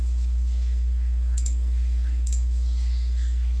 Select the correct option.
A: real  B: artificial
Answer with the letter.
B